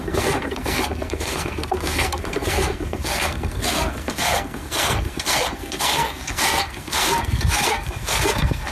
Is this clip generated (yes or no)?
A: yes